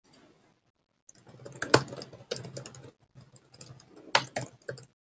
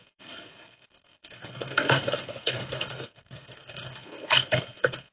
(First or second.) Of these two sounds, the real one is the first